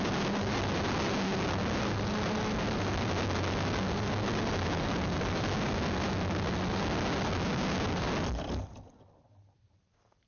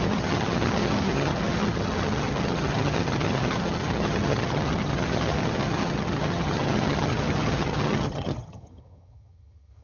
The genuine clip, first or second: first